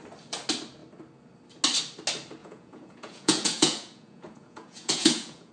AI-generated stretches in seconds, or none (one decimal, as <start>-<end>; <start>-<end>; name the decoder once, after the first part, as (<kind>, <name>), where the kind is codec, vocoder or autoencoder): 2.4-5.5 (vocoder, Vocos)